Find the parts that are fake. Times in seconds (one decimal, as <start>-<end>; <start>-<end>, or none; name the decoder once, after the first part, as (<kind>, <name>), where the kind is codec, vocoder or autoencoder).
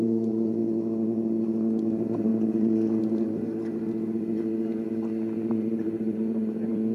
0.0-0.6 (vocoder, BigVGAN v2); 1.8-2.3; 3.0-3.5; 5.5-6.9